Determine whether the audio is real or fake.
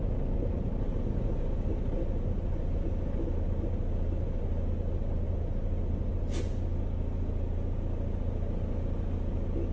real